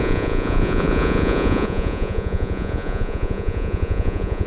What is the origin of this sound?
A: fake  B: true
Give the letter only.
A